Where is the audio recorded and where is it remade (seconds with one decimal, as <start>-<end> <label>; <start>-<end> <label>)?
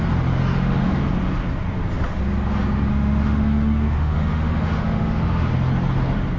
0.0-0.4 recorded; 0.4-0.9 remade; 0.9-2.9 recorded; 2.9-5.5 remade; 5.5-6.4 recorded